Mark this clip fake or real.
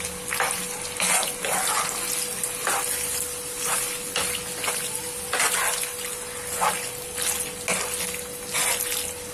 real